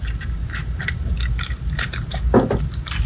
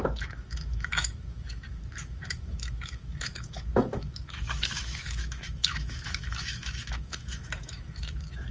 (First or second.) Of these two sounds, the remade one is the second